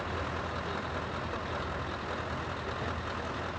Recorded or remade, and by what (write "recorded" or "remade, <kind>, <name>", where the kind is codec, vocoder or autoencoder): recorded